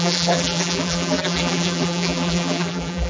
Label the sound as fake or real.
fake